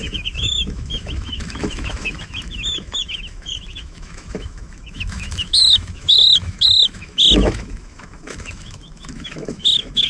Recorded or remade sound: remade